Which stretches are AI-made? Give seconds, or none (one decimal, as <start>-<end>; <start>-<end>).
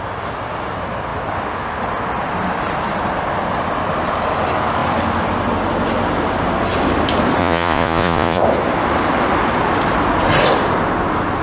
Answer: 7.4-8.4